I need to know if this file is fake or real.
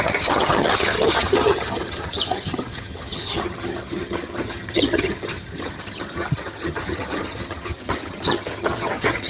fake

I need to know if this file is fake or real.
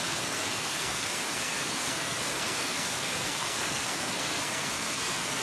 fake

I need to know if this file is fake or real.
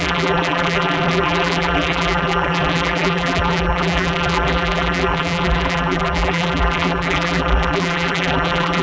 fake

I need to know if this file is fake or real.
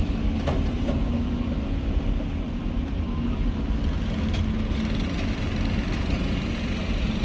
real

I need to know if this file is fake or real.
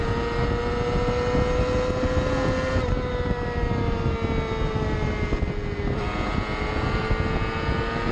real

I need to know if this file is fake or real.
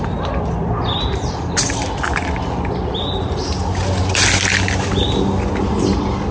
real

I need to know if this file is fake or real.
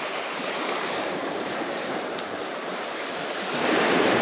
fake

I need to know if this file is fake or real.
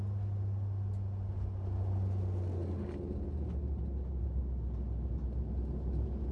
real